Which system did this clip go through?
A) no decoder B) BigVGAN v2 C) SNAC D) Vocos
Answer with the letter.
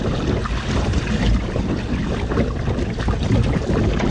A